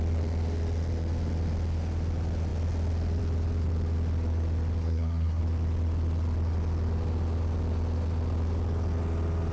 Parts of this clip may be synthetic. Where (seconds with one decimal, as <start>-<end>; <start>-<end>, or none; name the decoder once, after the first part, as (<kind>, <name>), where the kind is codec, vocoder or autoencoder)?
4.8-5.4 (codec, SNAC)